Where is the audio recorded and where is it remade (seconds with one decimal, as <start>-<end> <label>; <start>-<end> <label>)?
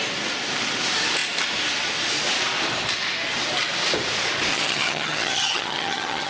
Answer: 0.0-4.5 recorded; 4.5-6.3 remade